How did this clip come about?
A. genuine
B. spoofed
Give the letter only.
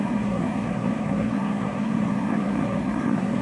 B